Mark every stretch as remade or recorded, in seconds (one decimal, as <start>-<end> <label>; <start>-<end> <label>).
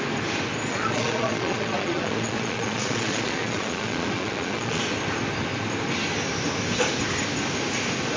0.0-0.7 recorded; 0.7-4.8 remade; 4.8-8.2 recorded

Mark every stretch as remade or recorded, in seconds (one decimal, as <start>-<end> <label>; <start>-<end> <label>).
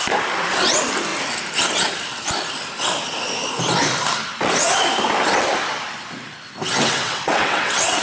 0.0-6.7 recorded; 6.7-8.0 remade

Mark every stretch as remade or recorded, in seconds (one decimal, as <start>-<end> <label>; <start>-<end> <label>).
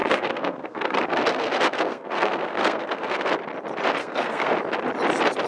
0.0-3.3 remade; 3.3-4.0 recorded; 4.0-4.5 remade; 4.5-5.5 recorded